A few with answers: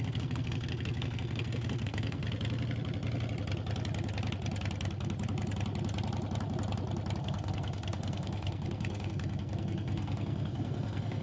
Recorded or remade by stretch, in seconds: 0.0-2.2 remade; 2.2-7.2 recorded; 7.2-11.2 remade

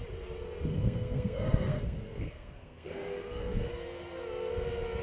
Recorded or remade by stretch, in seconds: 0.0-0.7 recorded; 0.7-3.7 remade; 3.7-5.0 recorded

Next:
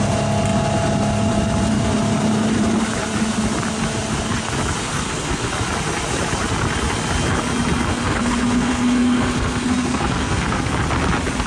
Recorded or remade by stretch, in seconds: 0.0-4.8 recorded; 4.8-5.5 remade; 5.5-7.9 recorded; 7.9-10.7 remade; 10.7-11.5 recorded